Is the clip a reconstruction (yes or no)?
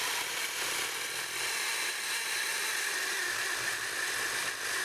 no